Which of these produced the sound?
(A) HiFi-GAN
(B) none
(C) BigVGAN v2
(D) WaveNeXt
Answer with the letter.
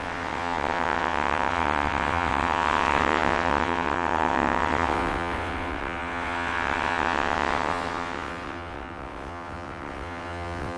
D